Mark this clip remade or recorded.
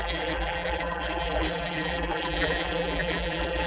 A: remade